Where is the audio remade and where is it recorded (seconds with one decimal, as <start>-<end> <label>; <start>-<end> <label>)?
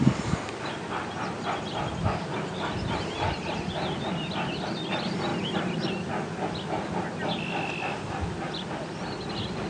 0.0-9.7 recorded